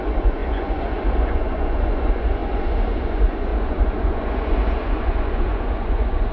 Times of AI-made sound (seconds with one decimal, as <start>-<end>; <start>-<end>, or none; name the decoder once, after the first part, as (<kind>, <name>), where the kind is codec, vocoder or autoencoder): 0.0-6.3 (vocoder, Vocos)